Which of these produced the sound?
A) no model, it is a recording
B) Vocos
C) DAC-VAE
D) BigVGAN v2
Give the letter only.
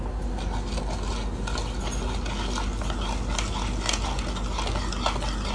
A